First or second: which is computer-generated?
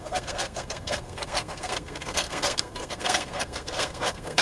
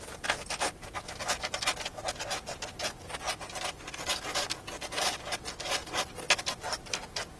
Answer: first